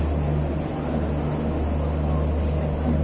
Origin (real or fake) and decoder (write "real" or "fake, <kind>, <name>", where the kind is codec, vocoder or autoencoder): real